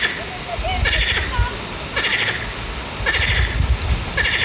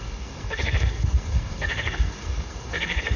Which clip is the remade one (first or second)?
second